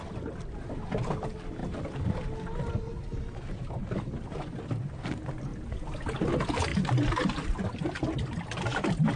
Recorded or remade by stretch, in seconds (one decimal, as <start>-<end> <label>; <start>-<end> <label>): 0.0-9.2 recorded